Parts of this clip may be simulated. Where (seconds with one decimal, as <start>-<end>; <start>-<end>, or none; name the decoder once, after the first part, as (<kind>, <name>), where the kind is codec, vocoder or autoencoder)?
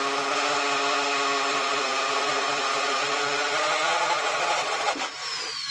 1.5-4.9 (vocoder, Vocos)